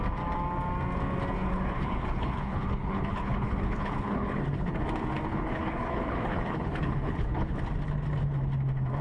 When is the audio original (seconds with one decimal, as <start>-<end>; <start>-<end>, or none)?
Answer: 0.0-1.5; 4.8-5.3; 7.6-9.0